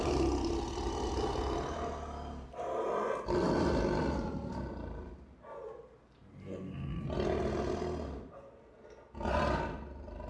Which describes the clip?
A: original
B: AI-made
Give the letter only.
A